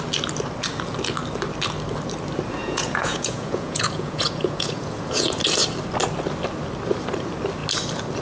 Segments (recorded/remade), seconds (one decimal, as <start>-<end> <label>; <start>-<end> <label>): 0.0-2.6 recorded; 2.6-5.4 remade; 5.4-8.2 recorded